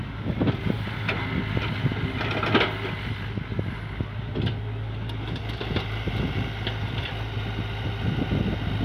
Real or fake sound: real